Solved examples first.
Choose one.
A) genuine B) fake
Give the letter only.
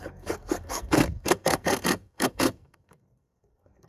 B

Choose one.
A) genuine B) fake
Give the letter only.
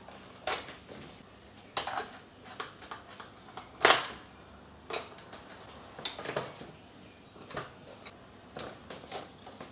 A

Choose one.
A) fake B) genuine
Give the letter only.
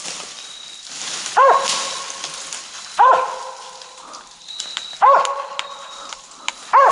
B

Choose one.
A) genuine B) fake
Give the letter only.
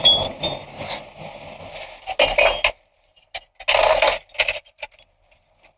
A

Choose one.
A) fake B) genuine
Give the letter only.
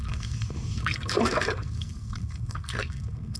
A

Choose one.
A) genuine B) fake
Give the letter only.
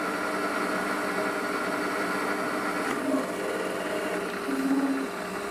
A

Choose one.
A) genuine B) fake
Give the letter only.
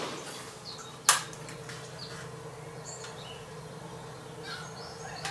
A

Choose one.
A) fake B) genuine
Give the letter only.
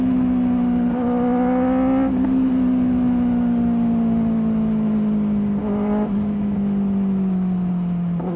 B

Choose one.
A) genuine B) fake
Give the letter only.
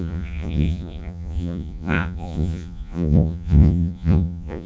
B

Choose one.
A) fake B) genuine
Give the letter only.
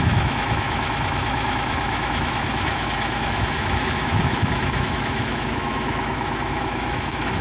A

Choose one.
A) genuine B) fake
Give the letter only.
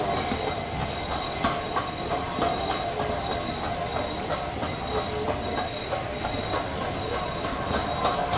A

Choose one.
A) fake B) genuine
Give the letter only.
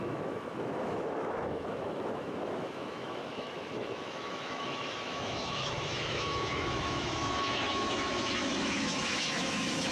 A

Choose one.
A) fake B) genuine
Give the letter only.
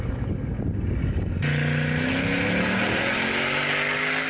B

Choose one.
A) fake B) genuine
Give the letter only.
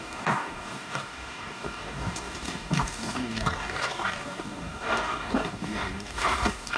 A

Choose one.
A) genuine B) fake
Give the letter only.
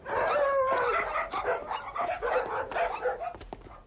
A